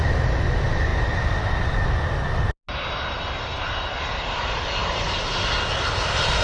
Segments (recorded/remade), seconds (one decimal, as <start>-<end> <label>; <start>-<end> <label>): 0.0-6.4 recorded

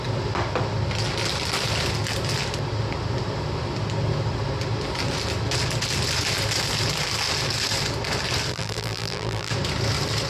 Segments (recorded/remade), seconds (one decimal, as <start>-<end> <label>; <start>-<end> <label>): 0.0-8.5 recorded; 8.5-9.5 remade; 9.5-10.3 recorded

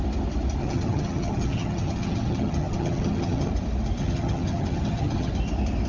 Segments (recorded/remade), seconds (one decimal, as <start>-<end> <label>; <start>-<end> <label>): 0.0-0.6 recorded; 0.6-3.5 remade; 3.5-4.0 recorded; 4.0-5.3 remade; 5.3-5.9 recorded